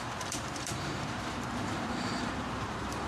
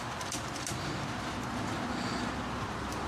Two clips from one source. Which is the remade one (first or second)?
first